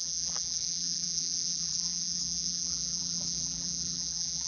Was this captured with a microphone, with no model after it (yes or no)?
no